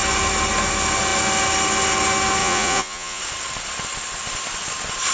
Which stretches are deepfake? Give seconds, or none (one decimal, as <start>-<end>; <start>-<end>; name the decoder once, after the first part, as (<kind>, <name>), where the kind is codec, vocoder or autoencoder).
2.4-3.2 (vocoder, Vocos)

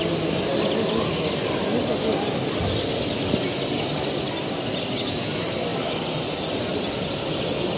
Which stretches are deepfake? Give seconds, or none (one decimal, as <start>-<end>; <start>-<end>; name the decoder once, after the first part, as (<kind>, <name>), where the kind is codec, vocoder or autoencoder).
none